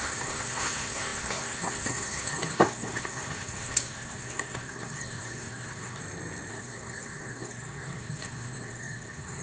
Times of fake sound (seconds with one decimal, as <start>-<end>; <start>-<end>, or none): 0.0-6.0; 6.5-9.4